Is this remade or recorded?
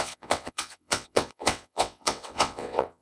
remade